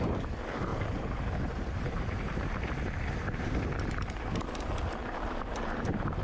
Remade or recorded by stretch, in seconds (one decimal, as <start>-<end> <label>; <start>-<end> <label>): 0.0-0.7 recorded; 0.7-4.4 remade; 4.4-5.0 recorded; 5.0-6.2 remade